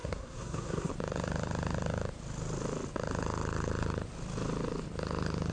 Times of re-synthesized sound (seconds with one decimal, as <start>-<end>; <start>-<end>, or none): 0.0-0.9